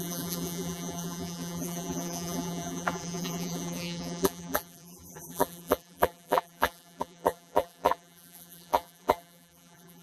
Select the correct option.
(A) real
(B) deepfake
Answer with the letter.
B